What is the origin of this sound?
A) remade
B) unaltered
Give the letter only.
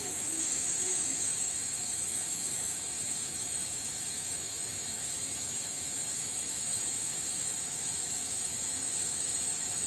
A